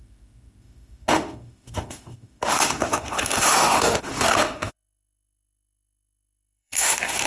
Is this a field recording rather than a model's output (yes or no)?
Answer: no